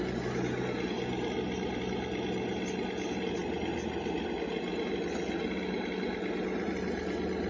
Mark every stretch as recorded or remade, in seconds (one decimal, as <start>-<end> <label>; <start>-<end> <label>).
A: 0.0-7.5 recorded